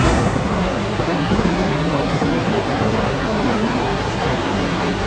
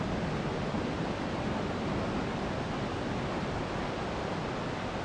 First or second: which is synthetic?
first